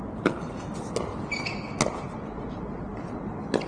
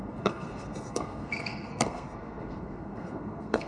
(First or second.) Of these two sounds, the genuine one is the first